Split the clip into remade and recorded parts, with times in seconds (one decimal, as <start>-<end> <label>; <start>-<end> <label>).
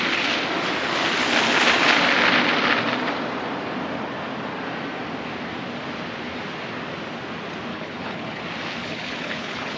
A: 0.0-7.7 recorded; 7.7-8.4 remade; 8.4-8.8 recorded; 8.8-9.8 remade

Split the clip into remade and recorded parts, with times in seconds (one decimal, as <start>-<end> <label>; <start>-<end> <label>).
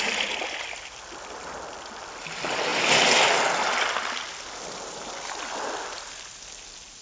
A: 0.0-7.0 recorded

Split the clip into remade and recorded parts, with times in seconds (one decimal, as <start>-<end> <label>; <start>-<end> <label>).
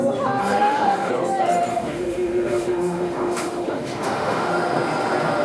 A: 0.0-0.4 recorded; 0.4-1.1 remade; 1.1-1.7 recorded; 1.7-4.5 remade; 4.5-5.4 recorded